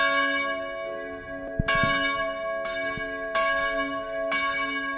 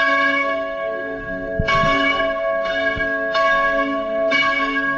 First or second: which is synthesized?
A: second